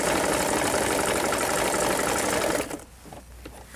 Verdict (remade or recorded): recorded